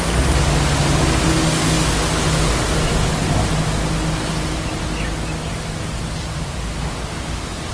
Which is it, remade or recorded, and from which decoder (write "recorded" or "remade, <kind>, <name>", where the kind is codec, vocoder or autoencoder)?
recorded